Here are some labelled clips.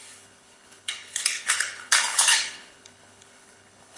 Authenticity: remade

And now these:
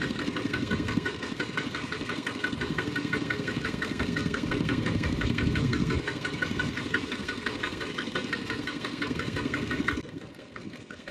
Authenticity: remade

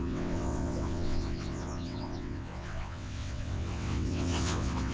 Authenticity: remade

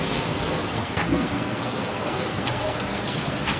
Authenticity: remade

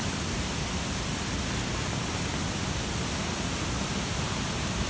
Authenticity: recorded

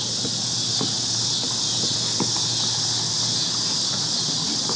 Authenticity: recorded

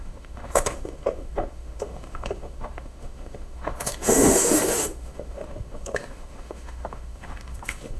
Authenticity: remade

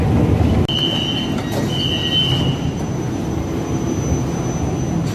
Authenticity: recorded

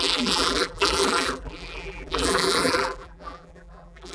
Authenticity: remade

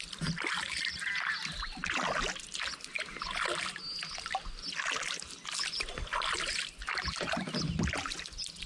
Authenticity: recorded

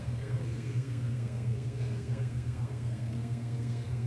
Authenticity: remade